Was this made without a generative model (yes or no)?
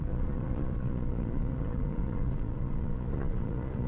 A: no